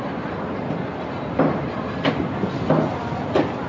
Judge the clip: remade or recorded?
recorded